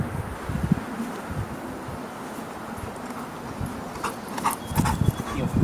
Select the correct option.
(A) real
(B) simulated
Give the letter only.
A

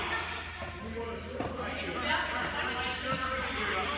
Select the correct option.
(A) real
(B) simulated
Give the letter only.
A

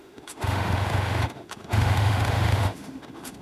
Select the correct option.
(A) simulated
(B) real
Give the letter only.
A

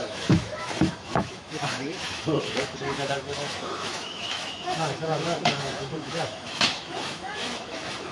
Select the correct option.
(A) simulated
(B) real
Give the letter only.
A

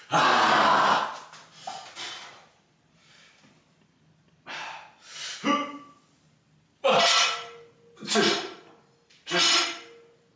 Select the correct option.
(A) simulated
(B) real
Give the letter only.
B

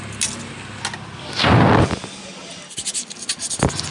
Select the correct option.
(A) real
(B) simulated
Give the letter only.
A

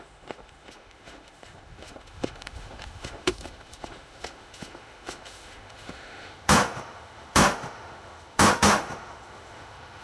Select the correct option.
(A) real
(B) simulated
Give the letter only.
B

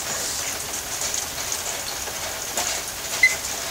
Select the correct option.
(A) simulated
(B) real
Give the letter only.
B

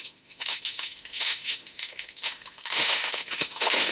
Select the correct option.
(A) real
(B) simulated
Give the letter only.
B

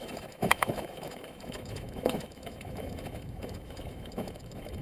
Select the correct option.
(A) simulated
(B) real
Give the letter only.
A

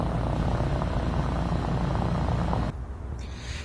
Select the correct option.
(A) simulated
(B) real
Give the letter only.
B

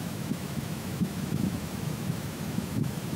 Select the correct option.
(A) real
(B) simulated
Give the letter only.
B